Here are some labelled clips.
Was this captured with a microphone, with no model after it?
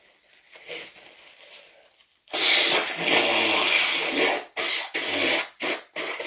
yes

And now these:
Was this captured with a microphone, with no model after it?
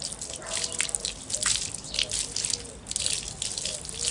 yes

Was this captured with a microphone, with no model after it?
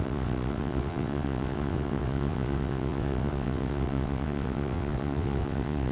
no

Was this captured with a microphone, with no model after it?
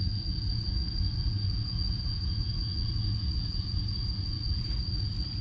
no